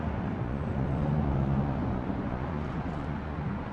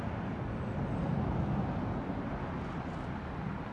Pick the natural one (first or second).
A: second